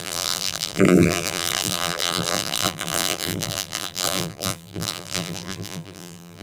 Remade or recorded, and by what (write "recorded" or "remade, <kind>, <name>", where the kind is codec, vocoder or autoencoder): remade, vocoder, BigVGAN v2